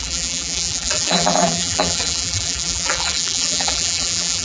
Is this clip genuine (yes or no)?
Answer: no